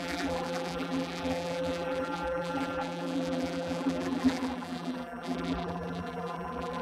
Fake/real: fake